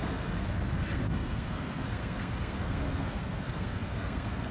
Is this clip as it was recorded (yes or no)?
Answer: no